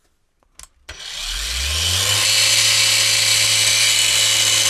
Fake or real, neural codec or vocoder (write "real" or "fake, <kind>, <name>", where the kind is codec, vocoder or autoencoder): real